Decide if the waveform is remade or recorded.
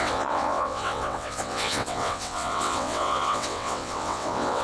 remade